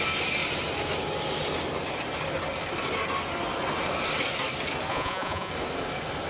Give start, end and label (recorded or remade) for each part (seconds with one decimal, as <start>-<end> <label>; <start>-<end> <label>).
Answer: 0.0-4.9 recorded; 4.9-5.5 remade; 5.5-6.3 recorded